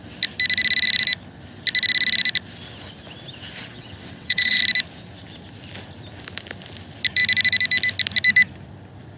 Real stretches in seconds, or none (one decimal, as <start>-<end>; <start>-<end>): 0.0-3.7; 4.6-9.2